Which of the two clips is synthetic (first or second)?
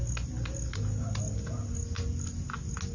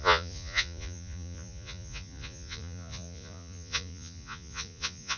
second